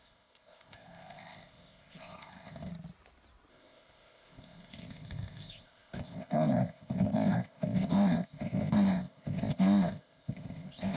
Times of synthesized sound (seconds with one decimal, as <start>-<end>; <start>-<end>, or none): 0.0-2.7; 3.5-11.0